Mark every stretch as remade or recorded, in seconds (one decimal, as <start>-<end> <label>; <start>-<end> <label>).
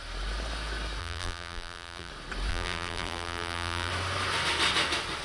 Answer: 0.0-1.0 recorded; 1.0-2.1 remade; 2.1-2.5 recorded; 2.5-3.9 remade; 3.9-5.2 recorded